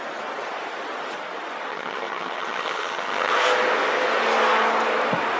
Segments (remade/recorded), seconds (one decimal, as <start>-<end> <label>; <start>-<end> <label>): 0.0-1.7 recorded; 1.7-3.3 remade; 3.3-5.4 recorded